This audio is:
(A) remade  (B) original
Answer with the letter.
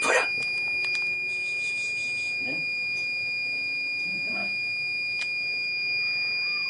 B